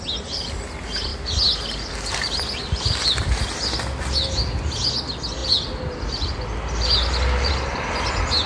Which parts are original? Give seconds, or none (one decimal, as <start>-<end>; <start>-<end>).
0.0-8.5

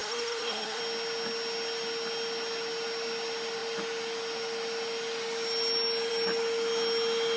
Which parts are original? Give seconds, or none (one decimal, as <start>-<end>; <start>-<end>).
0.8-7.4